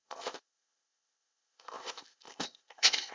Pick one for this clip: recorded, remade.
remade